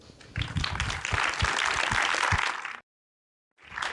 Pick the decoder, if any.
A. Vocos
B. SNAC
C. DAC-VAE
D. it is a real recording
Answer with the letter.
D